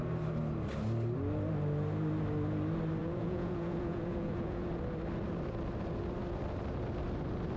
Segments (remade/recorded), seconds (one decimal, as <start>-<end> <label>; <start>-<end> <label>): 0.0-3.0 recorded; 3.0-4.6 remade; 4.6-7.6 recorded